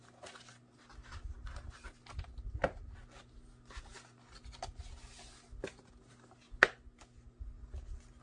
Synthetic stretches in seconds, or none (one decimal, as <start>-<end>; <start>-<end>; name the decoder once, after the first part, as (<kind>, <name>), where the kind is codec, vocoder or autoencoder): none